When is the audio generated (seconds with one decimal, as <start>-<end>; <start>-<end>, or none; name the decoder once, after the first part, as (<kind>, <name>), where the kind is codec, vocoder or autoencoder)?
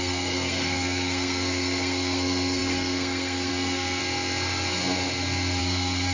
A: 0.0-4.0 (codec, SNAC); 5.6-6.1